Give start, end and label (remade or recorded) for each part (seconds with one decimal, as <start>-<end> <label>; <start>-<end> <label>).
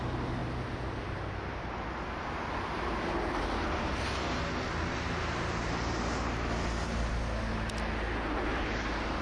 0.0-9.2 recorded